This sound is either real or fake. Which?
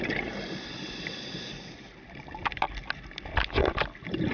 real